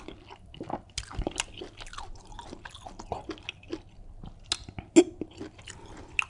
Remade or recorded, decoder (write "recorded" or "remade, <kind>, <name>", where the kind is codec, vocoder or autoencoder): recorded